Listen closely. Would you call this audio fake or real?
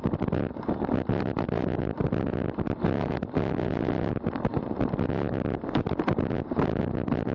real